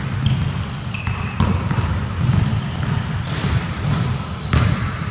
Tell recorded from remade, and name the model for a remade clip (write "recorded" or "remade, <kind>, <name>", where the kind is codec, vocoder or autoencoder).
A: recorded